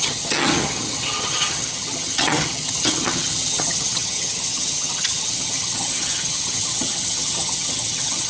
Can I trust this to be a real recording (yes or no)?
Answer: no